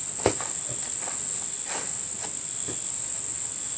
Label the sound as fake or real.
real